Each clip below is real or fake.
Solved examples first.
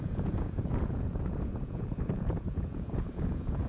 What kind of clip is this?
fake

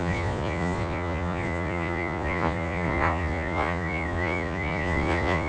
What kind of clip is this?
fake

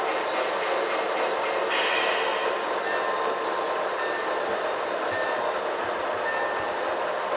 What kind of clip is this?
real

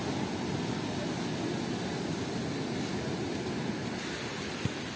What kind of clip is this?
real